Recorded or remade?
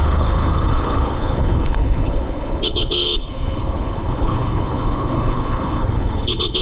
remade